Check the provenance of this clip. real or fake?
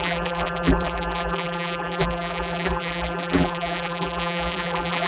fake